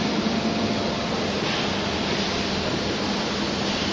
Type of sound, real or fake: real